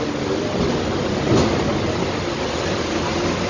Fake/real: real